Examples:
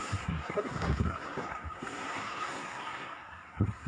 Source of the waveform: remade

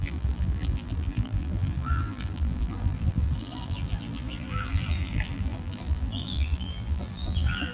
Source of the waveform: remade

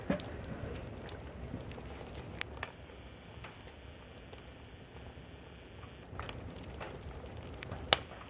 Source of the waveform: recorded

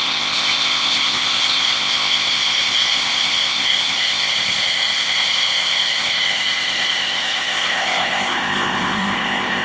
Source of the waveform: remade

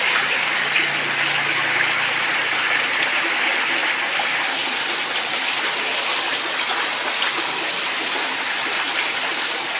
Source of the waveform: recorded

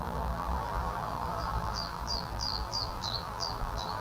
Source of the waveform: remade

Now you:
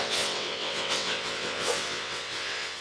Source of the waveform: remade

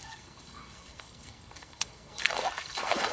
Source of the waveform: remade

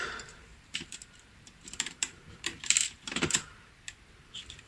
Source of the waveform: remade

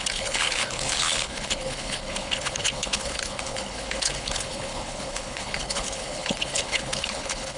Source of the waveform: remade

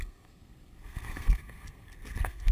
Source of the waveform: remade